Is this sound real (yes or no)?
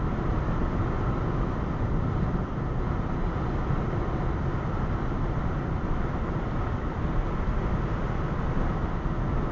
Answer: yes